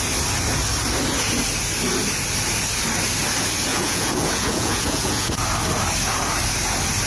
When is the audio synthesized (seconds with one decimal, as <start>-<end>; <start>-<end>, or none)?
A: 3.7-5.4